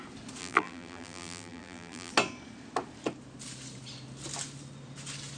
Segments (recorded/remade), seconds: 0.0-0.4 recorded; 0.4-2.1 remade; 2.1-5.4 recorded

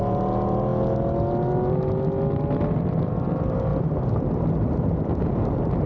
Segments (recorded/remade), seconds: 0.0-5.9 recorded

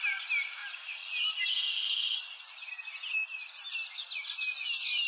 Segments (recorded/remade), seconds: 0.0-5.1 remade

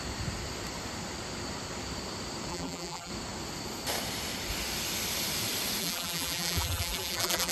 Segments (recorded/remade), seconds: 0.0-2.5 recorded; 2.5-3.1 remade; 3.1-5.8 recorded; 5.8-7.5 remade

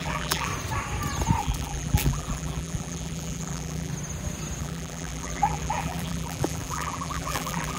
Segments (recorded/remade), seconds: 0.0-0.5 remade; 0.5-1.4 recorded; 1.4-3.9 remade; 3.9-4.6 recorded; 4.6-7.8 remade